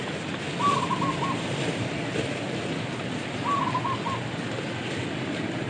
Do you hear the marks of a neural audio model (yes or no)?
no